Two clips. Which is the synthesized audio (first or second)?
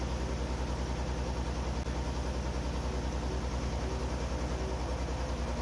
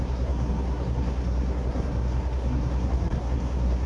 second